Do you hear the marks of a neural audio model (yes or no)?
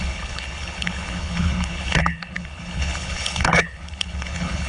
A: yes